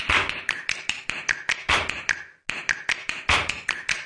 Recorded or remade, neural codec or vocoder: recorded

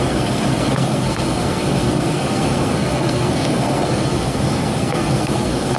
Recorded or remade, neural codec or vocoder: remade, codec, SNAC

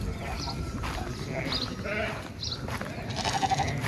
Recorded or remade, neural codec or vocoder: recorded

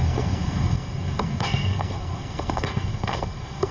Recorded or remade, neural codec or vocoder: remade, codec, SNAC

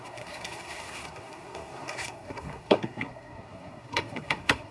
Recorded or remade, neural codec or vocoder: remade, codec, SNAC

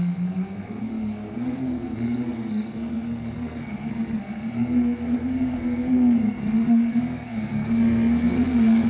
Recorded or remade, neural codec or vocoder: remade, codec, SNAC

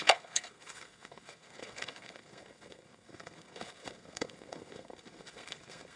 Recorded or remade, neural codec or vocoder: remade, codec, SNAC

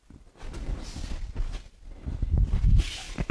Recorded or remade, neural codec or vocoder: recorded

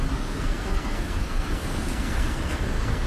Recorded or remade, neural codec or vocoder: remade, codec, SNAC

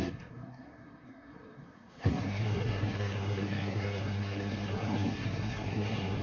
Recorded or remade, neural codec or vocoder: remade, codec, SNAC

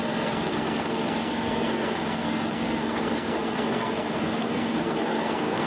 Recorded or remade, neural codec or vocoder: remade, codec, SNAC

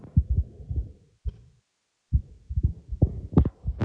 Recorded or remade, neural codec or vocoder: recorded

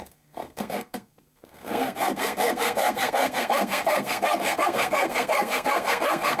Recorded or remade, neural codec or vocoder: remade, codec, SNAC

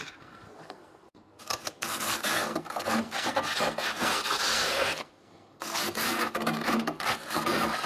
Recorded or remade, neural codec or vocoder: remade, codec, SNAC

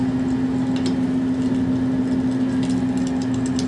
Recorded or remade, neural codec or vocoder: recorded